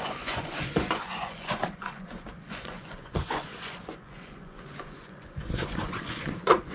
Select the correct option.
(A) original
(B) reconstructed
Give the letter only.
B